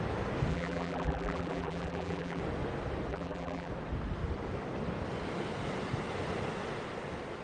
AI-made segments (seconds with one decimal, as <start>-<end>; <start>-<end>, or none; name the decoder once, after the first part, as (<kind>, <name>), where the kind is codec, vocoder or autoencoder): 0.5-2.4 (vocoder, BigVGAN v2); 3.1-3.7